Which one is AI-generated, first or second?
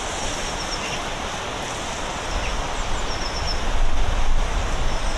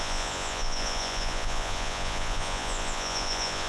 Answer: second